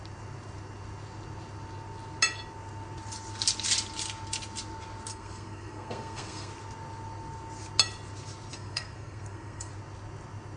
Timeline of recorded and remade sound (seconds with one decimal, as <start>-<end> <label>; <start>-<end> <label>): 0.0-5.1 recorded; 5.1-6.5 remade; 6.5-8.5 recorded; 8.5-9.7 remade; 9.7-10.6 recorded